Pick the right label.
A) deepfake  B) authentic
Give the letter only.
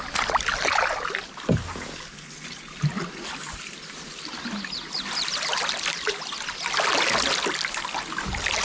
B